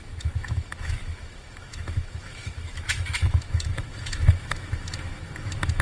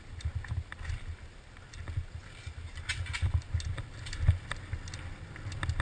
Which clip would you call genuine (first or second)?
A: second